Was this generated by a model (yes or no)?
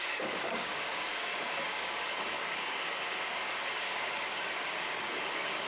yes